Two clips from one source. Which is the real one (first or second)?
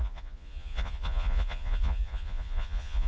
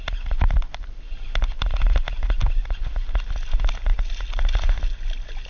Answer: second